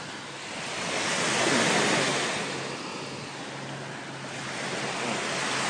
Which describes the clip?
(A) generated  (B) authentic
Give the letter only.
B